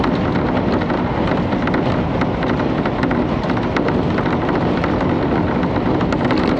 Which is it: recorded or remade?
recorded